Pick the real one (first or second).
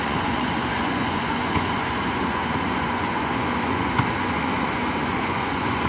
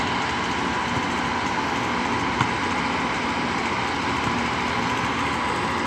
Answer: second